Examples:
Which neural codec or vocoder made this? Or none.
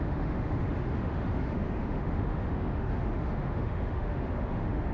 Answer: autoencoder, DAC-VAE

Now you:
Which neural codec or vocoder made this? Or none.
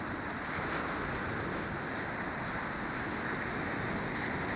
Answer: none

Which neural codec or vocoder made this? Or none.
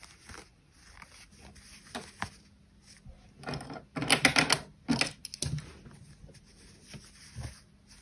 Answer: none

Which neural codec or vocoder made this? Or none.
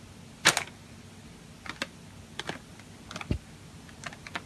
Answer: none